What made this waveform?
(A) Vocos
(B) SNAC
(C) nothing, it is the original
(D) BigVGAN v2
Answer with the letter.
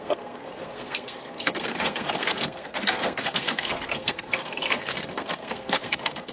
B